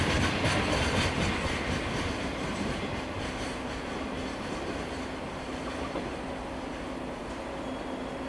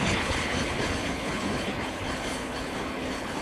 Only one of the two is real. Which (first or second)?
first